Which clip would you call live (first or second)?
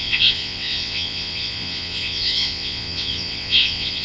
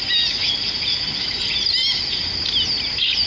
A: second